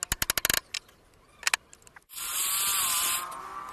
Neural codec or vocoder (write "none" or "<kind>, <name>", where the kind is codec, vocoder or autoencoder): none